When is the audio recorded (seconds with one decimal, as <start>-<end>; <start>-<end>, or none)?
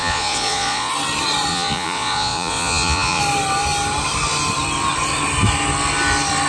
0.9-1.5; 3.2-6.5